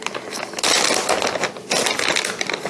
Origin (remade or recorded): recorded